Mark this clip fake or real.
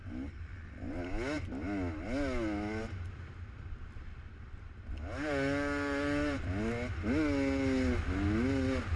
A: real